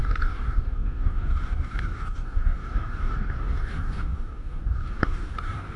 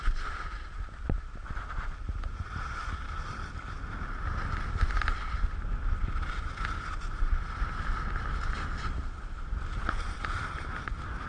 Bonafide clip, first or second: second